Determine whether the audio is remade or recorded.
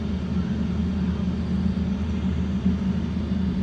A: recorded